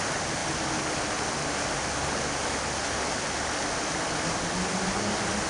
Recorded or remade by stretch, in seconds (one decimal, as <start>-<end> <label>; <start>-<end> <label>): 0.0-5.5 recorded